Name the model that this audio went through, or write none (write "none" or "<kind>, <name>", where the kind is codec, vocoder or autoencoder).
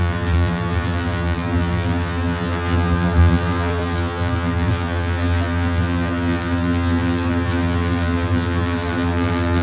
vocoder, BigVGAN v2